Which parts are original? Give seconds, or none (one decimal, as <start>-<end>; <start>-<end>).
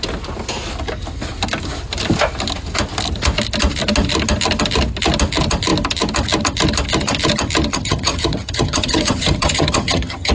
0.0-7.7